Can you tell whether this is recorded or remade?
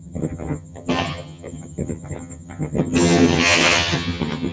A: remade